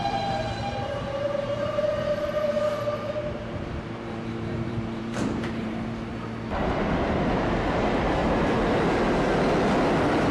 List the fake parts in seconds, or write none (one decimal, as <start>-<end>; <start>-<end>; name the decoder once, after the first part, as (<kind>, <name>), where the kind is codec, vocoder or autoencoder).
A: 0.0-6.1 (vocoder, BigVGAN v2); 7.0-8.2